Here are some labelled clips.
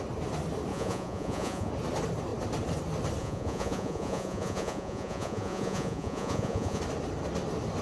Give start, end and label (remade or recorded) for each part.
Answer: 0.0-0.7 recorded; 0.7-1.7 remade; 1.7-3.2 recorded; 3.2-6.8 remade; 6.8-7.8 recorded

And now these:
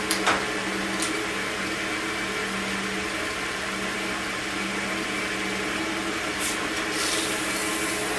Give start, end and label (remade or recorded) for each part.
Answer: 0.0-0.7 recorded; 0.7-1.6 remade; 1.6-2.4 recorded; 2.4-7.3 remade; 7.3-8.2 recorded

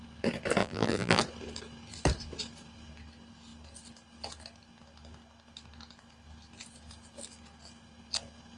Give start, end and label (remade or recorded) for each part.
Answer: 0.0-0.6 recorded; 0.6-1.2 remade; 1.2-8.6 recorded

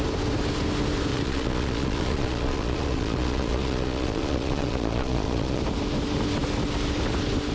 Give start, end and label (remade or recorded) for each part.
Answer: 0.0-1.1 recorded; 1.1-5.6 remade; 5.6-7.5 recorded

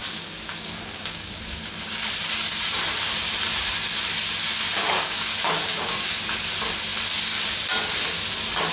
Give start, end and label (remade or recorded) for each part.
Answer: 0.0-1.6 remade; 1.6-4.8 recorded; 4.8-6.1 remade; 6.1-8.7 recorded

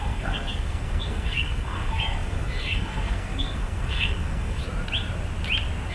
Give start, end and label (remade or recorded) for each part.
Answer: 0.0-4.6 remade; 4.6-5.9 recorded